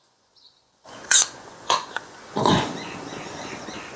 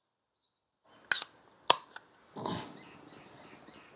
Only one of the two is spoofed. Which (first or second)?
first